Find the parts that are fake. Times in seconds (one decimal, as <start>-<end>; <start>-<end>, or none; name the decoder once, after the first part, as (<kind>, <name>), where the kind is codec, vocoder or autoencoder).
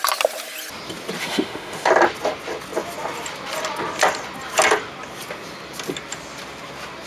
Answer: 1.2-1.9 (autoencoder, DAC-VAE)